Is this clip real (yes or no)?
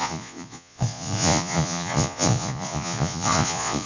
no